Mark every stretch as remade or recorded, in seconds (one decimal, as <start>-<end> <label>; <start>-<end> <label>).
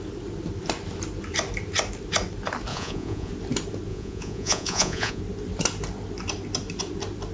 0.0-2.7 recorded; 2.7-3.3 remade; 3.3-3.9 recorded; 3.9-5.2 remade; 5.2-7.3 recorded